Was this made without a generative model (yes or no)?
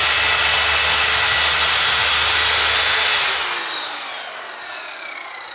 yes